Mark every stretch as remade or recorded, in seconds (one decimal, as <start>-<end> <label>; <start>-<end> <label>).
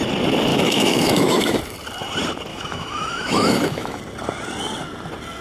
0.0-0.5 recorded; 0.5-1.6 remade; 1.6-2.5 recorded; 2.5-4.0 remade; 4.0-5.4 recorded